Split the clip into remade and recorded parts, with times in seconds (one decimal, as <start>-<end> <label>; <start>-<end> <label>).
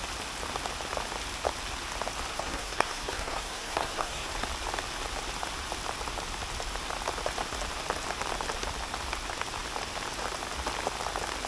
0.0-2.3 recorded; 2.3-4.3 remade; 4.3-11.5 recorded